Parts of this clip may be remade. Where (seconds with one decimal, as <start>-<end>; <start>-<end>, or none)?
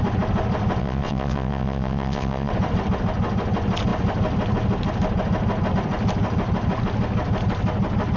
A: 0.8-2.5